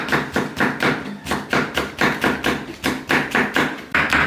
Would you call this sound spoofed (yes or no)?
no